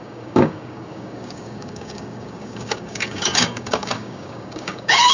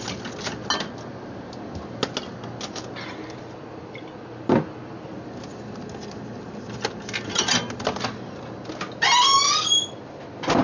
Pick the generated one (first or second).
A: first